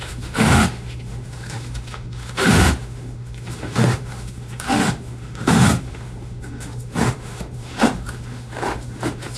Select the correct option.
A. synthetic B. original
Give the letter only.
A